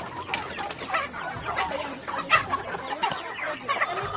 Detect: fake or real real